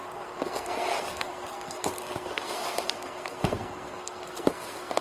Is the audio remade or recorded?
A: remade